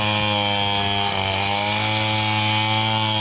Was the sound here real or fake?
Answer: real